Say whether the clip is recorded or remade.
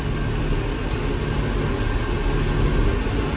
recorded